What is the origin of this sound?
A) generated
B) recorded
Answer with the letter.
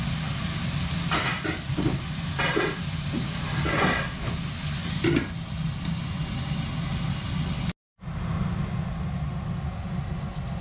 B